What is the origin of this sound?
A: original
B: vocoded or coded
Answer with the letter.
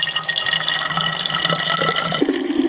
A